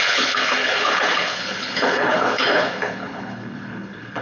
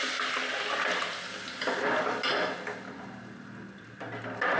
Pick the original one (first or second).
second